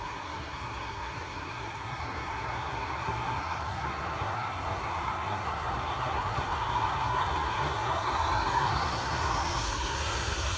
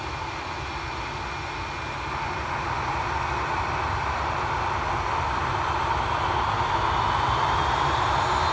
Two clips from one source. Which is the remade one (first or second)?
first